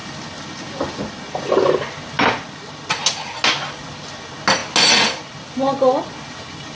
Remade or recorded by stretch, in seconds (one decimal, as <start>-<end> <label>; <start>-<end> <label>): 0.0-6.7 recorded